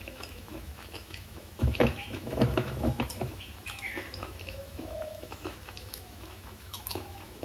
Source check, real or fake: fake